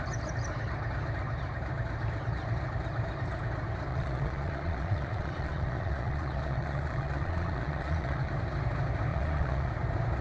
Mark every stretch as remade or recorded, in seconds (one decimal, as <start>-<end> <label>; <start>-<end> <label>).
0.0-3.9 recorded; 3.9-8.3 remade; 8.3-9.1 recorded; 9.1-9.7 remade; 9.7-10.2 recorded